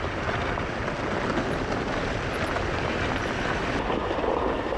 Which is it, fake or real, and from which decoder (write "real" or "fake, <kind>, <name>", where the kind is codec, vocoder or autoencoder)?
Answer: real